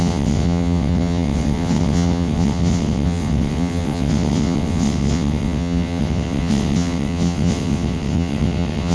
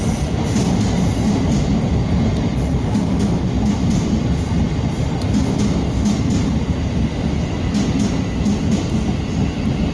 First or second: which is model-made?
first